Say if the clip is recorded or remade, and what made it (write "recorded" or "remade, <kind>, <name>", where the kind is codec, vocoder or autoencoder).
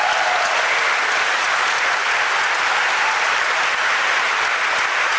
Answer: recorded